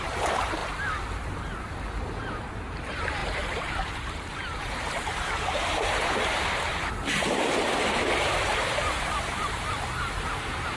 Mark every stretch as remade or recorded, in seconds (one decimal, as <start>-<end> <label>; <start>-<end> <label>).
0.0-0.6 remade; 0.6-2.3 recorded; 2.3-10.8 remade